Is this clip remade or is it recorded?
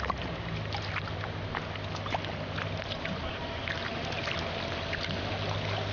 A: recorded